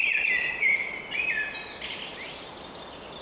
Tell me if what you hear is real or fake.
real